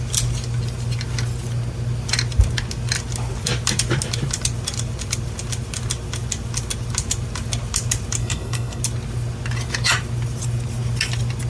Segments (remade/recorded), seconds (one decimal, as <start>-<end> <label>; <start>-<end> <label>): 0.0-8.2 recorded; 8.2-8.8 remade; 8.8-11.5 recorded